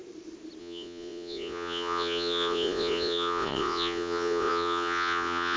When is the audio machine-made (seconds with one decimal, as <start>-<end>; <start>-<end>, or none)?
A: 0.6-5.6